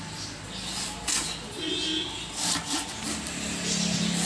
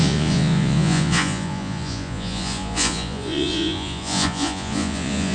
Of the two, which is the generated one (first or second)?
second